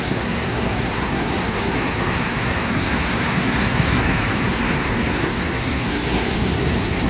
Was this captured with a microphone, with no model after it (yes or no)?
no